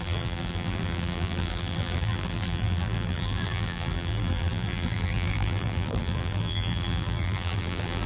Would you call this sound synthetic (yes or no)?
yes